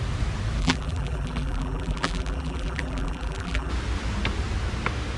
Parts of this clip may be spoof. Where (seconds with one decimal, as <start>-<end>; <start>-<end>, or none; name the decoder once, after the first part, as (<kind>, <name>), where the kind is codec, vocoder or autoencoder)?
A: 0.6-3.7 (vocoder, BigVGAN v2)

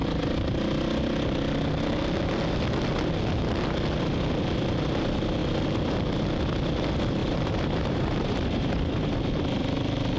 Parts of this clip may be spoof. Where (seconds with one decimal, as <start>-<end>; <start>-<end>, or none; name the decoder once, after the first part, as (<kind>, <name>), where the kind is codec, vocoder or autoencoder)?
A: 7.2-9.1 (vocoder, BigVGAN v2)